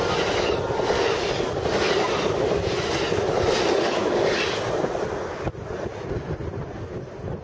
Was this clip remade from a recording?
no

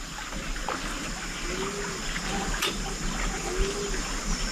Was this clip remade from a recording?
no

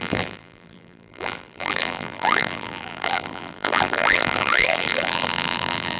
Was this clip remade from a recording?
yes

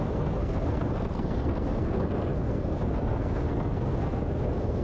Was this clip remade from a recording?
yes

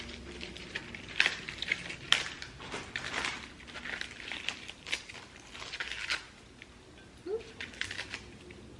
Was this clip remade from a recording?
no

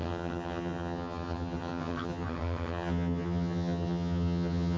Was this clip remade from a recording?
yes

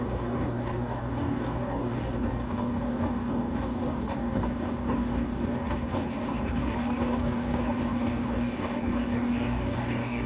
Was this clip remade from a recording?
yes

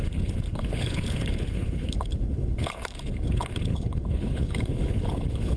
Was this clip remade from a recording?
yes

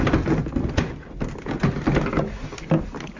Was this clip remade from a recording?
no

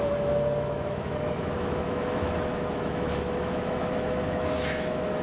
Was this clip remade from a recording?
yes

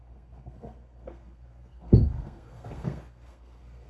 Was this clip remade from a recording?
yes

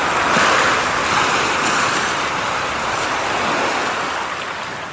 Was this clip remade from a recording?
no